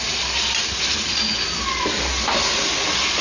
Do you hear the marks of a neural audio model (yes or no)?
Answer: no